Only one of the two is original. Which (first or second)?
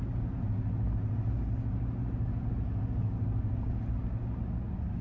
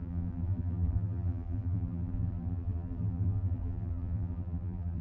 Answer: first